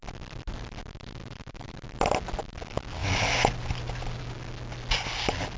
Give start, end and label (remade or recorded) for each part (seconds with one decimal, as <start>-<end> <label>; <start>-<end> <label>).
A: 0.0-5.6 recorded